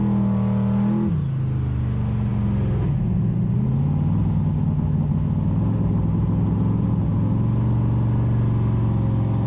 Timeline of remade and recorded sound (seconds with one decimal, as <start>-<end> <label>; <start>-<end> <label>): 0.0-9.5 recorded